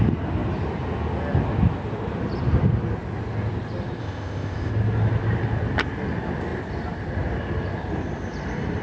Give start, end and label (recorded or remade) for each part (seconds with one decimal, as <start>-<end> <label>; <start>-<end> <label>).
0.0-4.0 recorded; 4.0-4.7 remade; 4.7-8.8 recorded